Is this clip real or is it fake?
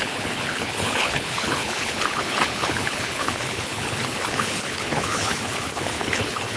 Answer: fake